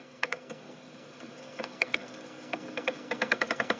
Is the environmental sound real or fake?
fake